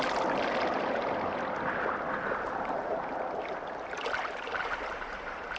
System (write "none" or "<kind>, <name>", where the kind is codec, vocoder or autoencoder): none